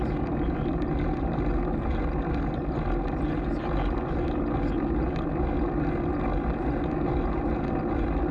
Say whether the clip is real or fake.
real